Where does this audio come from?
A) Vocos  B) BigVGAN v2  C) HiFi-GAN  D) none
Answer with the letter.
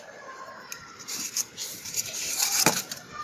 B